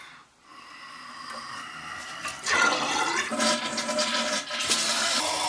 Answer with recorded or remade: recorded